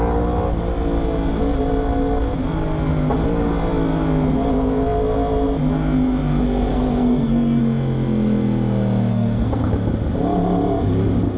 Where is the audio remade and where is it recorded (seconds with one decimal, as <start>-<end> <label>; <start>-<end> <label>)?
0.0-6.7 recorded; 6.7-7.6 remade; 7.6-9.1 recorded; 9.1-9.7 remade; 9.7-11.4 recorded